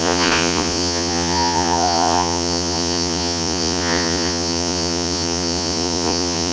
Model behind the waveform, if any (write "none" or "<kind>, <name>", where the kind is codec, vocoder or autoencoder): vocoder, Vocos